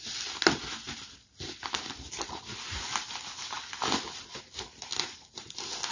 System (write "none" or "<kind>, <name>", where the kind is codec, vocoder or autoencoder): none